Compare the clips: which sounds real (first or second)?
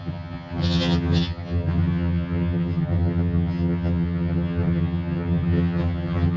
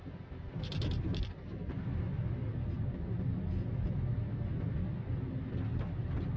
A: second